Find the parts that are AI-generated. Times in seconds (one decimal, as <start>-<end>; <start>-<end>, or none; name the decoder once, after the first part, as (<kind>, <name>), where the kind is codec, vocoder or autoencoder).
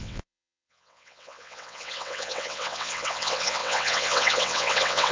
0.0-5.1 (vocoder, WaveNeXt)